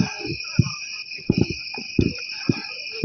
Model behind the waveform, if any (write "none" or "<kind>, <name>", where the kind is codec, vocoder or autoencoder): none